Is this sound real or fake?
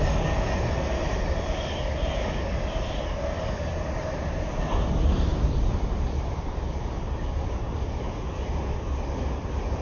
real